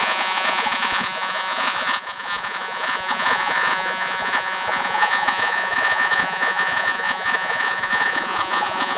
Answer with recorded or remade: remade